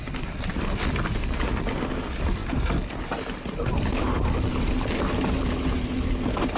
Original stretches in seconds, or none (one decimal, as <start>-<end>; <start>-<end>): 0.0-6.6